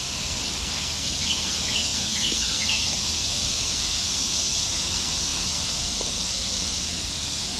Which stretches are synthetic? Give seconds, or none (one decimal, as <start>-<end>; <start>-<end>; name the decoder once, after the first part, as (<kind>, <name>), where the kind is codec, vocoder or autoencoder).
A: 0.0-7.6 (codec, SNAC)